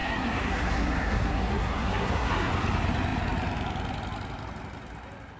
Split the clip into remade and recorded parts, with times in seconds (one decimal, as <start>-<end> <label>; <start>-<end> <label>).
0.0-2.5 remade; 2.5-5.4 recorded